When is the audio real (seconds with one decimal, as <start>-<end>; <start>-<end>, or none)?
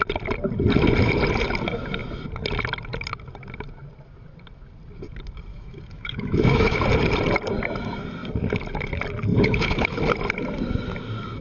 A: 0.0-5.5; 6.8-9.3; 10.0-11.4